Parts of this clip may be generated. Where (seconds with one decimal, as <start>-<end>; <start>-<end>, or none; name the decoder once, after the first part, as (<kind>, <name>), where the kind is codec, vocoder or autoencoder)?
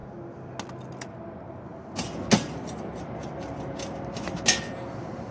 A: none